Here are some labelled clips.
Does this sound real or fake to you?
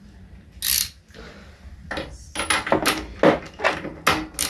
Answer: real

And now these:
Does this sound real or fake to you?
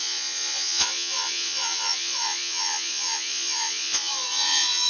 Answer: fake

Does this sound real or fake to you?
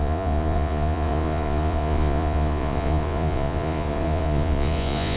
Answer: fake